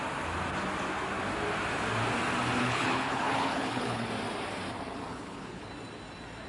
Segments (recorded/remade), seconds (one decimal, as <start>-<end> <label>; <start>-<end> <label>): 0.0-2.6 recorded; 2.6-4.1 remade; 4.1-5.1 recorded; 5.1-5.7 remade; 5.7-6.5 recorded